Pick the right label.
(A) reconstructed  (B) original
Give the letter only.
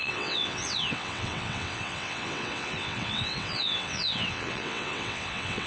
A